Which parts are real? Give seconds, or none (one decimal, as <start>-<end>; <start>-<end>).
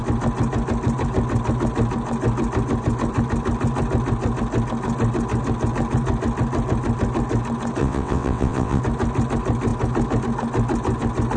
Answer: 0.0-7.8; 8.8-11.4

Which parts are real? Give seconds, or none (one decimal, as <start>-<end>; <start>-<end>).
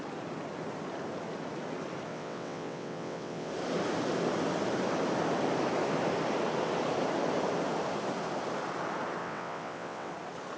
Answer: 0.0-2.1; 3.5-9.2; 10.1-10.6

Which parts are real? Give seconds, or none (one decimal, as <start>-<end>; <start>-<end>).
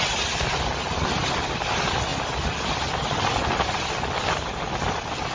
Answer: 0.0-5.3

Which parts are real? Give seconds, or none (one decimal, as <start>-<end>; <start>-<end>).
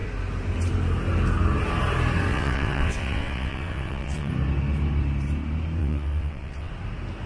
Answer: 0.0-2.3; 4.3-5.8; 6.7-7.3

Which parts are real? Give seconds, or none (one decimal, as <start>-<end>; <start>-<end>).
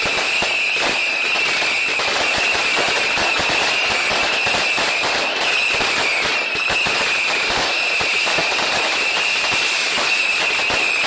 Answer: 0.0-11.1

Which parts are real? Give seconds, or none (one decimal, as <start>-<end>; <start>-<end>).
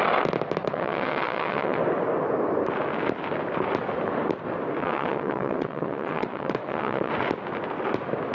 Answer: 0.0-0.6; 1.8-4.8; 7.1-8.3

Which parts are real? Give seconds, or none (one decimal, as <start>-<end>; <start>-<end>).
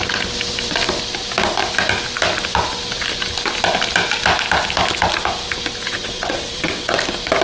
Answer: 0.0-5.9; 6.9-7.4